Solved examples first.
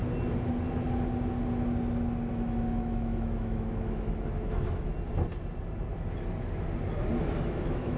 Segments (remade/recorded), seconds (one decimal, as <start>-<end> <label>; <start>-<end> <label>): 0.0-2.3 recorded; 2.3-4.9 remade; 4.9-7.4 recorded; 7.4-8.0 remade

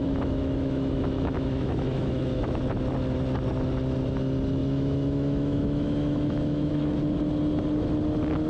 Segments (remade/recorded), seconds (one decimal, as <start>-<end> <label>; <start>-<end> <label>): 0.0-2.6 remade; 2.6-4.6 recorded; 4.6-7.0 remade; 7.0-8.5 recorded

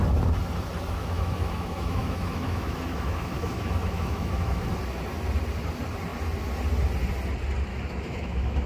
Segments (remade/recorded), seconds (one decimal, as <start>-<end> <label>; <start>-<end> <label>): 0.0-1.0 recorded; 1.0-4.6 remade; 4.6-7.7 recorded; 7.7-8.7 remade

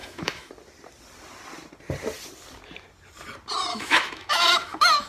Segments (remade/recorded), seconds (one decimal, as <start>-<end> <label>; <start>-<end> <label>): 0.0-0.5 remade; 0.5-3.7 recorded; 3.7-5.1 remade

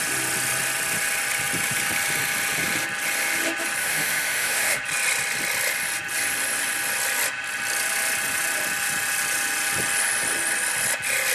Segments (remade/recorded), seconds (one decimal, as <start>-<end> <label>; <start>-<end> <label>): 0.0-3.8 recorded; 3.8-4.8 remade; 4.8-11.3 recorded

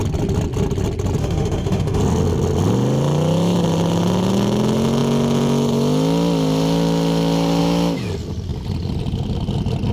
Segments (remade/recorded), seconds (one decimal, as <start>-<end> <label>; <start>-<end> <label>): 0.0-1.2 recorded; 1.2-2.0 remade; 2.0-9.9 recorded

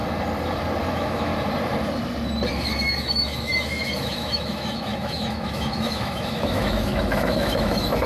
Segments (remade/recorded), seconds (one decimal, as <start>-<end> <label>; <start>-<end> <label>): 0.0-0.9 recorded; 0.9-1.3 remade; 1.3-2.5 recorded; 2.5-8.1 remade

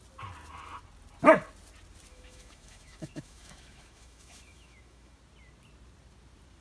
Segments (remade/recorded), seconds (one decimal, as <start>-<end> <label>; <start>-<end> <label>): 0.0-2.1 recorded; 2.1-5.2 remade; 5.2-6.6 recorded